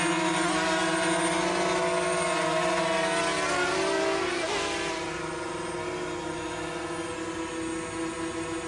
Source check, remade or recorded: recorded